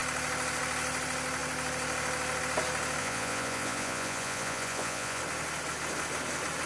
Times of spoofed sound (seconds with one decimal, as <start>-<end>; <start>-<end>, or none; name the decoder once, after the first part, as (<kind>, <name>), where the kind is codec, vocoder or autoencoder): 3.0-5.2 (vocoder, Vocos)